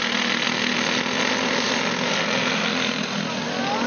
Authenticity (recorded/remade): recorded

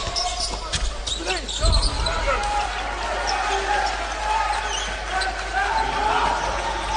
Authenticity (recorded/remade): recorded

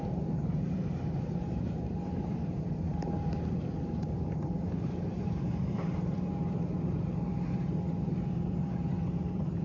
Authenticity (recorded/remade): remade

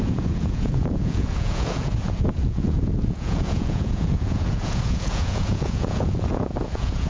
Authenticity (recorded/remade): remade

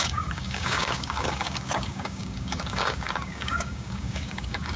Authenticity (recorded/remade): remade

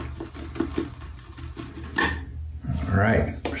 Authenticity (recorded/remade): recorded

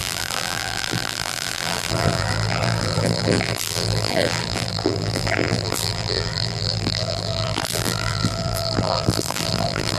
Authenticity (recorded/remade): remade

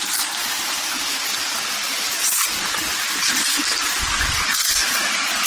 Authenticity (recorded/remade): recorded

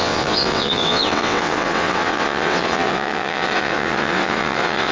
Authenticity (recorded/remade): remade